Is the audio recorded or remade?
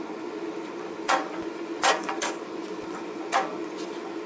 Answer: remade